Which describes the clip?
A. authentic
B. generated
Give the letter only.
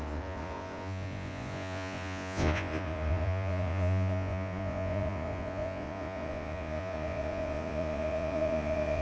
B